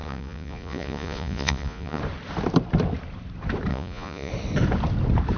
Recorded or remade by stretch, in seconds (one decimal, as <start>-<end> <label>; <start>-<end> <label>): 0.0-2.0 remade; 2.0-3.7 recorded; 3.7-4.3 remade; 4.3-5.4 recorded